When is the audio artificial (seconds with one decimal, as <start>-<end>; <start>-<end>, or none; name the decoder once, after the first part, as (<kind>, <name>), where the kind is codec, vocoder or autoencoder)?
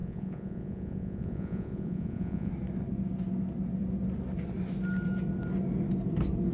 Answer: 0.0-2.5 (vocoder, Vocos)